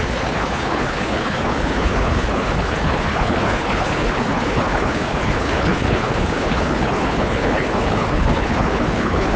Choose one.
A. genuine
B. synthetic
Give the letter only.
B